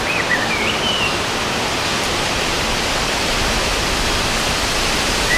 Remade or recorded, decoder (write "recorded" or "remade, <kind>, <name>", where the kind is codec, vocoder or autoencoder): remade, vocoder, BigVGAN v2